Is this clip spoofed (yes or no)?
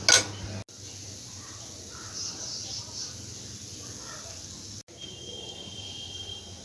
no